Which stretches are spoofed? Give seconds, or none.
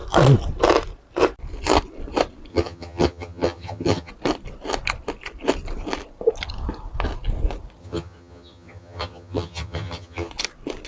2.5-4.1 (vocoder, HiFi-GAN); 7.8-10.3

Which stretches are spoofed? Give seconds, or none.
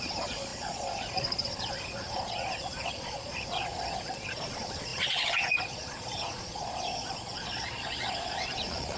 0.0-9.0 (vocoder, Vocos)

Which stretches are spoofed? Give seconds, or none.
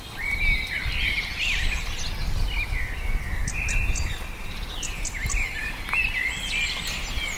none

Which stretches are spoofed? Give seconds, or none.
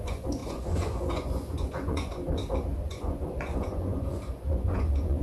0.0-2.4 (vocoder, Vocos); 2.9-5.2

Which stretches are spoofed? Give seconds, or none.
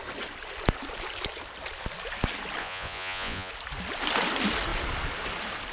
2.6-3.5 (vocoder, Vocos)